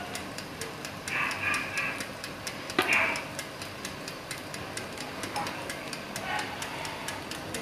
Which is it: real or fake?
real